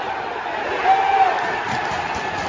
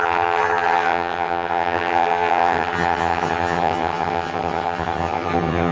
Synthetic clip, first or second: second